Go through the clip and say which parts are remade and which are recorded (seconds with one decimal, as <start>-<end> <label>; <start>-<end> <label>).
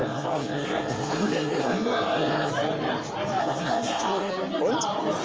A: 0.0-2.5 remade; 2.5-3.4 recorded; 3.4-4.3 remade; 4.3-5.2 recorded